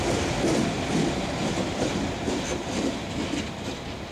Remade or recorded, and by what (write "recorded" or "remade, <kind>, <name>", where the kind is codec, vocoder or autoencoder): recorded